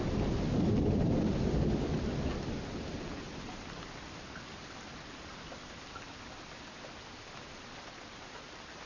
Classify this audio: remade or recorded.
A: recorded